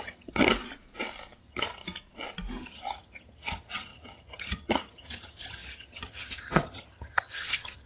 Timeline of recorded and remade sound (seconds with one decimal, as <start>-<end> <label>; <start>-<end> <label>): 0.0-0.5 remade; 0.5-1.4 recorded; 1.4-1.8 remade; 1.8-2.7 recorded; 2.7-7.9 remade